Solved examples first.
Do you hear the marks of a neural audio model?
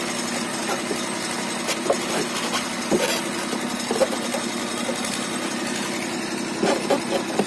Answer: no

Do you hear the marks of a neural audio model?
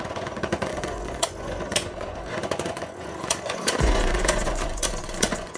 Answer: yes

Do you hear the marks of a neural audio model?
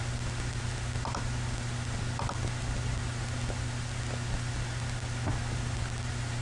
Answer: no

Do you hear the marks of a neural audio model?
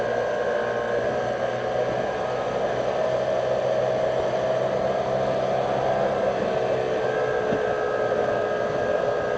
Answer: no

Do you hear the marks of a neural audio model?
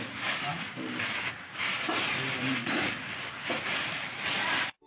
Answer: no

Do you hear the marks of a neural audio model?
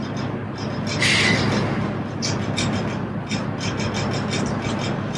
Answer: no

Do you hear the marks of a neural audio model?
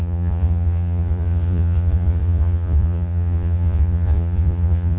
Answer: yes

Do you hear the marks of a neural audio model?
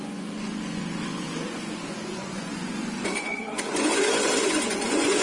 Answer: yes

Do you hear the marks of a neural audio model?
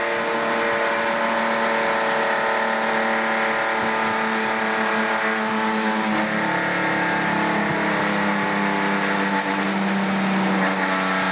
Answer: no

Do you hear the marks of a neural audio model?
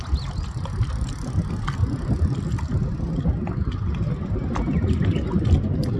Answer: no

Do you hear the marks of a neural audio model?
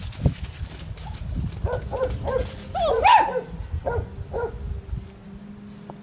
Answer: no